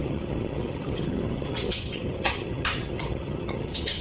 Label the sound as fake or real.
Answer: fake